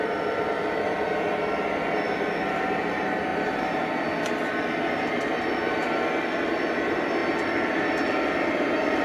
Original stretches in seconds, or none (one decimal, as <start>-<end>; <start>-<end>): 0.0-3.3; 3.8-9.0